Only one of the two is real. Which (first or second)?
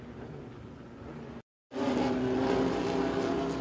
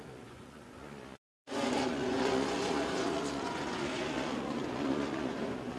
first